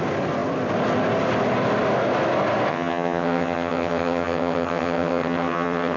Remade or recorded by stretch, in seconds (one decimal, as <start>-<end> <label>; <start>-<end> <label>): 0.0-2.7 recorded; 2.7-6.0 remade